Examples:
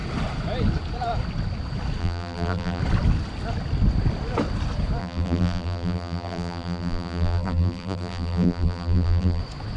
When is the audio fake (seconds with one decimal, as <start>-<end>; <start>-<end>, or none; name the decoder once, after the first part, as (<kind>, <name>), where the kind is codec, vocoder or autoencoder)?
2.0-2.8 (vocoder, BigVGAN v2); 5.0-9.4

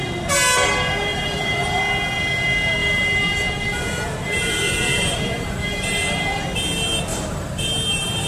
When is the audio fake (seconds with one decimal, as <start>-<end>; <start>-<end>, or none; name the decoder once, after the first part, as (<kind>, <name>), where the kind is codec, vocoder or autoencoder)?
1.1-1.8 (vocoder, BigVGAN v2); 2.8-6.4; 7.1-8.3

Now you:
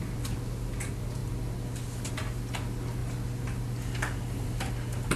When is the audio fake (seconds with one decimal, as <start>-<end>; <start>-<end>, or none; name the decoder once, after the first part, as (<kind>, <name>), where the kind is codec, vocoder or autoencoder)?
none